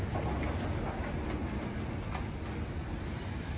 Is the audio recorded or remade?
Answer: recorded